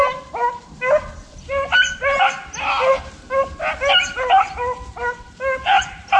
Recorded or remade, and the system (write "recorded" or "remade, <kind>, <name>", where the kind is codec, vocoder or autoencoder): recorded